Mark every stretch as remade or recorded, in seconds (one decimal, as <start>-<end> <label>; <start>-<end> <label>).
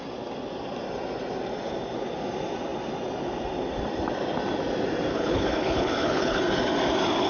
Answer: 0.0-5.1 recorded; 5.1-6.4 remade; 6.4-7.3 recorded